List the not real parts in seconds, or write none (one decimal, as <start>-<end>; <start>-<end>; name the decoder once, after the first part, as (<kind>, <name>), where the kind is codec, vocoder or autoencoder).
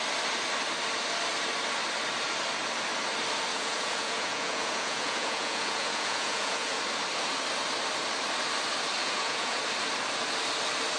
3.5-6.8 (vocoder, Vocos); 9.0-9.6